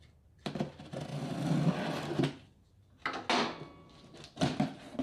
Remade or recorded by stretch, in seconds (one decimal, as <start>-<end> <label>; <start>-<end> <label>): 0.0-5.0 recorded